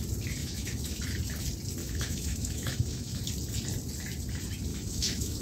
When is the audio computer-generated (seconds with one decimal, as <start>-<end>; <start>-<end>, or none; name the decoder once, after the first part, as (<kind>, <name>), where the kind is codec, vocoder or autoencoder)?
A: 0.4-1.0 (autoencoder, DAC-VAE); 1.8-3.2; 4.7-5.4